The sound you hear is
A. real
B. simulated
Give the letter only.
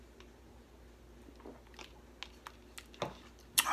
A